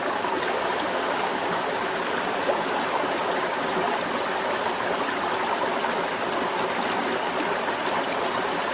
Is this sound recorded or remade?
recorded